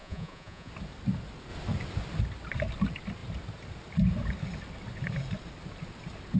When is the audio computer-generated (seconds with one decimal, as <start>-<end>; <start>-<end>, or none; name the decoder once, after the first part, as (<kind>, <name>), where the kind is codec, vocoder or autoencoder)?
0.0-0.7 (vocoder, Vocos)